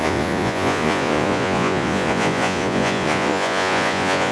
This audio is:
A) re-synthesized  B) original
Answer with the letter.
A